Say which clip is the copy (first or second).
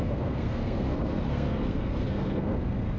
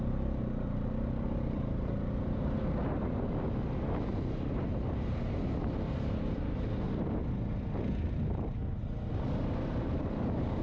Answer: first